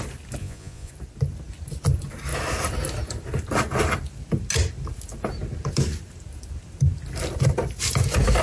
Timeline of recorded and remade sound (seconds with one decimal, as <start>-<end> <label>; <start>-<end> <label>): 0.0-0.4 recorded; 0.4-0.9 remade; 0.9-8.4 recorded